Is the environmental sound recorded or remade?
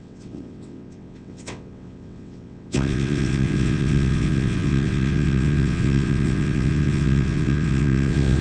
remade